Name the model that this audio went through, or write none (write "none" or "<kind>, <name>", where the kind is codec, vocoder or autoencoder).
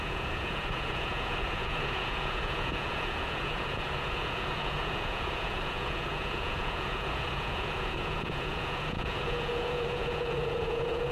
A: vocoder, Vocos